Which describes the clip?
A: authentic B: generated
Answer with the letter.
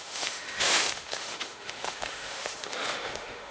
B